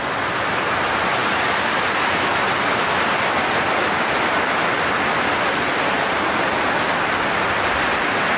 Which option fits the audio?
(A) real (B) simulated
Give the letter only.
A